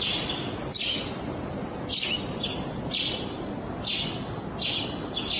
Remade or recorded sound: recorded